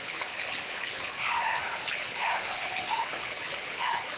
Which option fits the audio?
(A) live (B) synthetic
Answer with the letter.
B